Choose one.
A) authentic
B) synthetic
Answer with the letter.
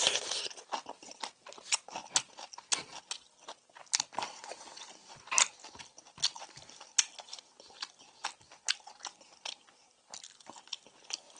A